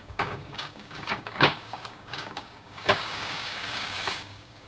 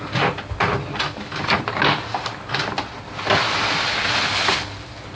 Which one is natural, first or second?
second